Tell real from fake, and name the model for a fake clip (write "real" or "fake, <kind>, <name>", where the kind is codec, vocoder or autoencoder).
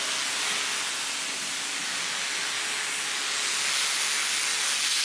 real